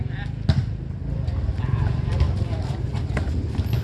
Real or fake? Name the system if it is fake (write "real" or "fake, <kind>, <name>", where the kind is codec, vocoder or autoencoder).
real